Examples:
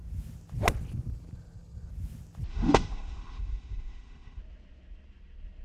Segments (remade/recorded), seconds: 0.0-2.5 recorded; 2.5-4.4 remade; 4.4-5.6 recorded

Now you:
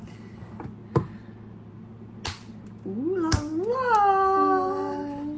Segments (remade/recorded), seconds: 0.0-5.4 recorded

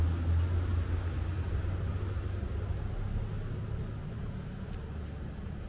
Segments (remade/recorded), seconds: 0.0-5.7 recorded